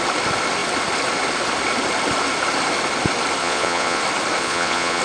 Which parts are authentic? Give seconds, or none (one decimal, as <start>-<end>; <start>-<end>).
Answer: 0.0-3.4; 4.0-4.4